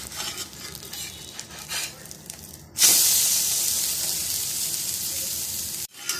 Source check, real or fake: real